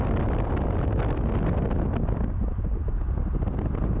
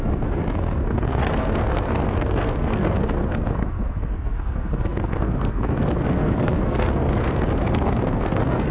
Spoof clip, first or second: second